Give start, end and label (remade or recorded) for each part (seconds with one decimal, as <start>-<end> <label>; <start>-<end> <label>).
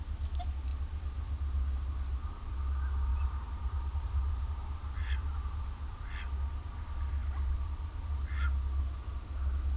0.0-3.1 recorded; 3.1-6.1 remade; 6.1-9.8 recorded